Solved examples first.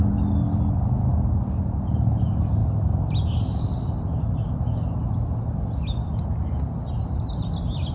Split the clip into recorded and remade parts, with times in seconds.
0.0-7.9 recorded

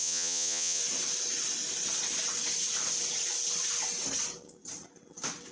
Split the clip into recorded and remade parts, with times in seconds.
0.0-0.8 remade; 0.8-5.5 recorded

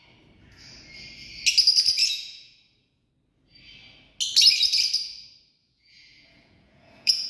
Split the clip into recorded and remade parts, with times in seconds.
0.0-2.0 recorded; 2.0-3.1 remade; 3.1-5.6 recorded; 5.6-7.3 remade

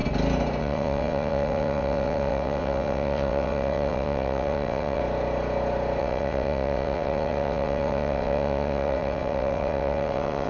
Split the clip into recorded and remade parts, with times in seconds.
0.0-0.6 recorded; 0.6-5.0 remade; 5.0-6.0 recorded; 6.0-10.5 remade

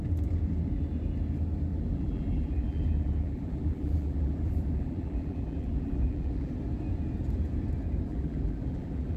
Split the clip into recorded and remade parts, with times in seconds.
0.0-1.7 recorded; 1.7-6.5 remade; 6.5-8.1 recorded; 8.1-9.2 remade

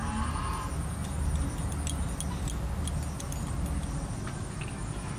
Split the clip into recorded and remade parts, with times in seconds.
0.0-5.2 recorded